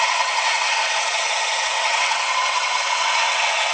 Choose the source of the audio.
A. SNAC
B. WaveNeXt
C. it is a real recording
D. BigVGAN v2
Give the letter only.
B